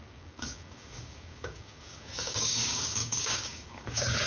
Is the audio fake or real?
fake